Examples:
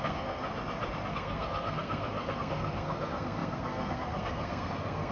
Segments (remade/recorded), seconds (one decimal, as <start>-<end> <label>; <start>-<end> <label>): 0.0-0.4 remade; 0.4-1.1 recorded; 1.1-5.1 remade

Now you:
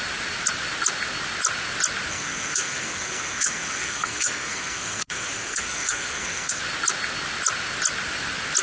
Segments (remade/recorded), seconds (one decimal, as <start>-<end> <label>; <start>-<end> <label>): 0.0-2.1 recorded; 2.1-6.6 remade; 6.6-8.6 recorded

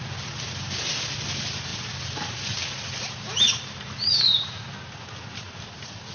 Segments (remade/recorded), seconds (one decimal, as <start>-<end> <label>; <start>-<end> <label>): 0.0-6.1 recorded

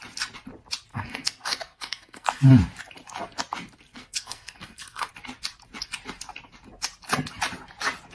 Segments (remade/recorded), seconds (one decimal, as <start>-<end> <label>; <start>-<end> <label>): 0.0-0.9 recorded; 0.9-2.4 remade; 2.4-3.9 recorded; 3.9-5.1 remade; 5.1-8.1 recorded

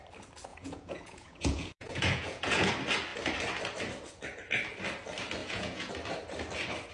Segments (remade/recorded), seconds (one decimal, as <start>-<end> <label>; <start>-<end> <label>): 0.0-0.5 recorded; 0.5-2.7 remade; 2.7-5.4 recorded; 5.4-5.9 remade; 5.9-6.9 recorded